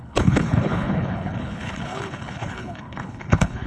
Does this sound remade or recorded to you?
remade